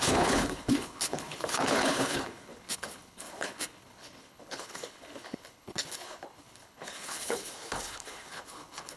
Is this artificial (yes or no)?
yes